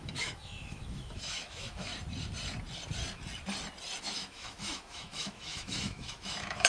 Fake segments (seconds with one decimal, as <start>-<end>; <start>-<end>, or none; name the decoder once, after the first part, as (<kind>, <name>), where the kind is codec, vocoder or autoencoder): 0.0-1.9 (autoencoder, DAC-VAE); 4.0-6.7